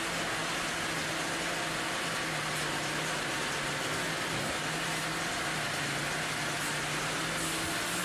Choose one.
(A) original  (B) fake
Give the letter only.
A